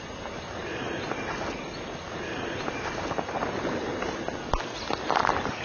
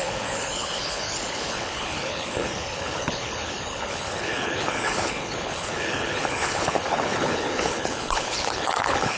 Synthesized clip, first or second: second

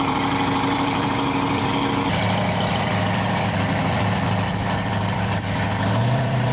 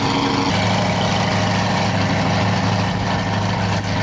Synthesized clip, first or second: first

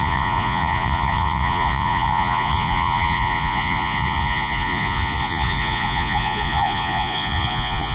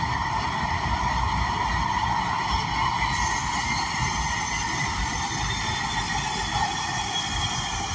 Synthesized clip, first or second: first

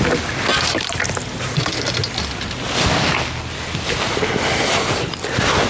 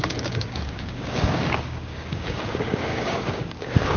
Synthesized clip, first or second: second